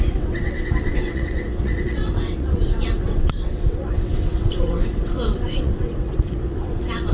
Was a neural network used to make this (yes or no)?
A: yes